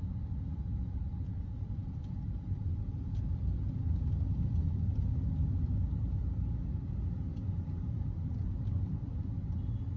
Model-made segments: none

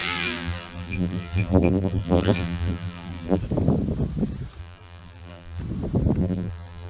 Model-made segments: 0.0-3.4 (vocoder, BigVGAN v2); 4.6-5.6; 6.2-6.9

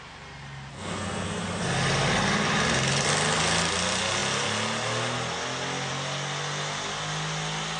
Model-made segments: 0.7-1.4 (codec, SNAC)

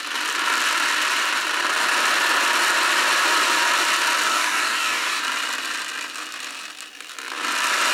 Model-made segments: 4.3-5.2 (codec, DAC)

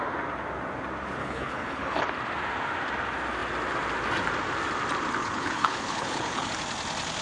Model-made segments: 1.2-2.0 (codec, HILCodec); 5.2-6.5

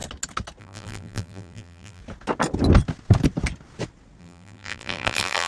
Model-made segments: 0.6-2.0 (vocoder, BigVGAN v2); 4.2-5.5